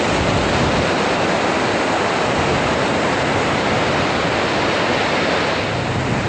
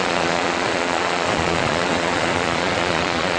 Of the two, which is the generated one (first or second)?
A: second